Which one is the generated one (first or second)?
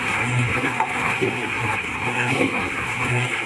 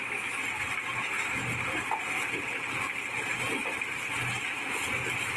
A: first